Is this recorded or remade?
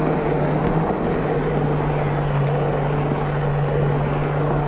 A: recorded